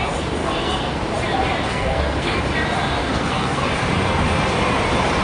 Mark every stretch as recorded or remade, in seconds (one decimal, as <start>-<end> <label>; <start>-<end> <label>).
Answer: 0.0-0.4 recorded; 0.4-1.0 remade; 1.0-1.7 recorded; 1.7-2.4 remade; 2.4-3.0 recorded; 3.0-3.7 remade; 3.7-5.2 recorded